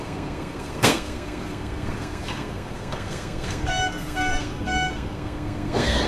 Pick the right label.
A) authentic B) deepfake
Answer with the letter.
B